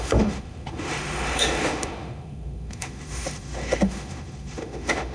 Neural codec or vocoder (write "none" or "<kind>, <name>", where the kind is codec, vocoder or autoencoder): autoencoder, DAC-VAE